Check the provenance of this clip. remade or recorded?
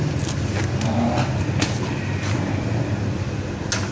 recorded